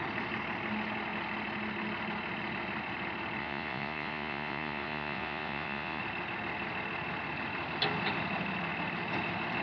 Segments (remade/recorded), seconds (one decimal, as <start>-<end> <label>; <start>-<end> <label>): 0.0-3.4 recorded; 3.4-6.0 remade; 6.0-9.6 recorded